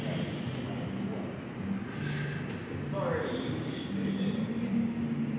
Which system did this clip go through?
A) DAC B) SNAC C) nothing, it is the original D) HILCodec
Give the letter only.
C